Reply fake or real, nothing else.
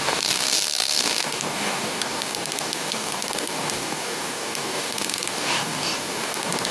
fake